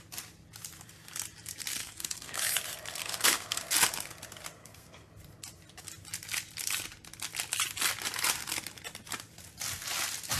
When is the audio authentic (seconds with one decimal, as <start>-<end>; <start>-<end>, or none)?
0.0-1.8; 2.4-3.0; 3.6-4.6; 5.1-10.4